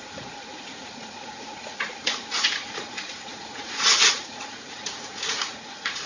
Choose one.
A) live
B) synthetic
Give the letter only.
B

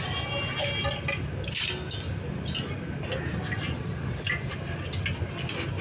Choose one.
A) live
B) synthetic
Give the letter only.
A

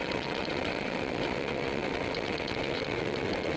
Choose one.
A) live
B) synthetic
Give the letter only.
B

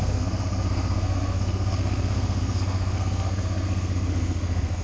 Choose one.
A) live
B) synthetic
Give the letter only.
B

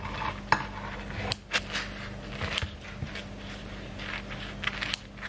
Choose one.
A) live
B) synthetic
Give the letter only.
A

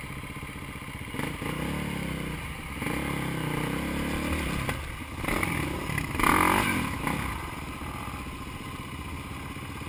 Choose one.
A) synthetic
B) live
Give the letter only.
B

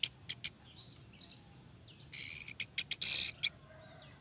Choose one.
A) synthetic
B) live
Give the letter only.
B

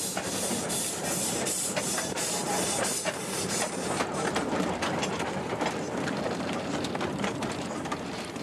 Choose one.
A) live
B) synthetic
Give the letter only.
B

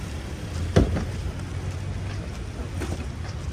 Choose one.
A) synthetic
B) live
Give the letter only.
B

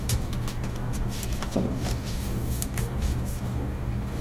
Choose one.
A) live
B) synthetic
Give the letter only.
B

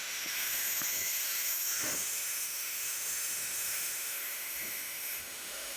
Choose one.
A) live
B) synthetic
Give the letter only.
B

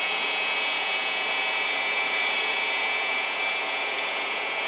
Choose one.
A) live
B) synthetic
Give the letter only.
B